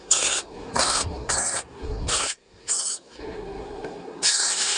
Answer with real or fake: fake